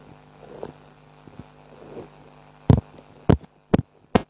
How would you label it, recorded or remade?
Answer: recorded